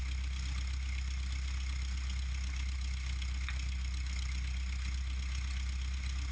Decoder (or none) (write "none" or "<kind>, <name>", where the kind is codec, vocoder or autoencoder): none